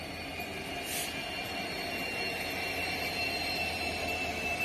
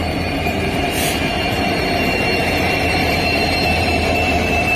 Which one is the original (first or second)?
first